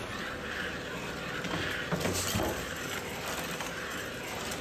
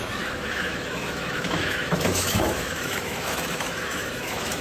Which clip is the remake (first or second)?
second